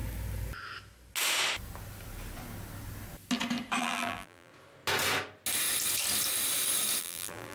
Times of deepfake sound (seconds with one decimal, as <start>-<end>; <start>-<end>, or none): 3.8-4.5; 7.0-7.5